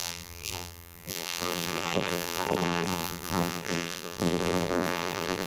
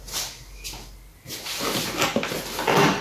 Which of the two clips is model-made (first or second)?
first